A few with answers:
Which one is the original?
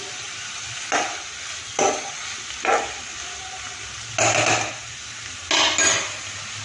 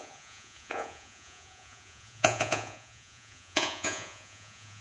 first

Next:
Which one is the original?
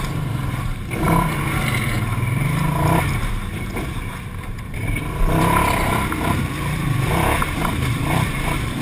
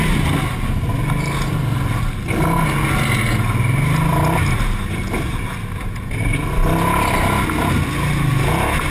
second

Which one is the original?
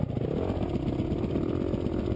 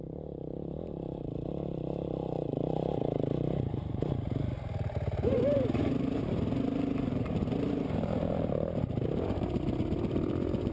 first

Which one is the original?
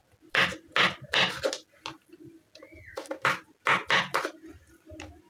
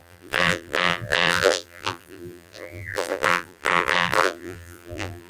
first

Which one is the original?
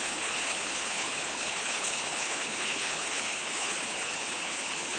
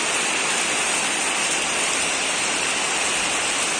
second